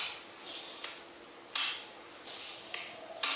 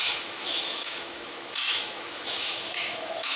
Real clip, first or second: first